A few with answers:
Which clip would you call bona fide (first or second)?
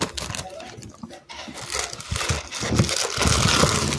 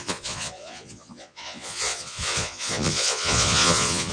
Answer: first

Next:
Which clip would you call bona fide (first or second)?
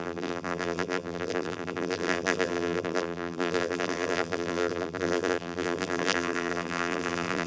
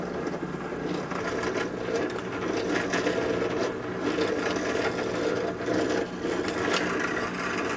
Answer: second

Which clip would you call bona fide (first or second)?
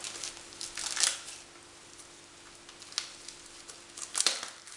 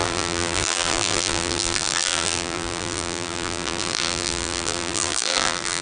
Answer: first